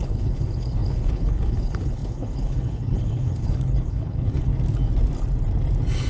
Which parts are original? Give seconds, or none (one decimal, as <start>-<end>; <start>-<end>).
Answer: 4.5-6.1